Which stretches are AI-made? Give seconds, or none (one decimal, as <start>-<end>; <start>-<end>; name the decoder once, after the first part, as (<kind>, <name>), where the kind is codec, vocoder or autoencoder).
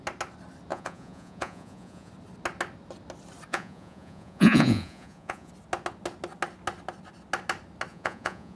0.7-2.1 (vocoder, Vocos); 3.5-5.5; 7.9-8.6